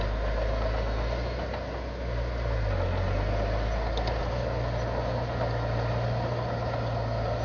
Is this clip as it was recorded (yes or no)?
yes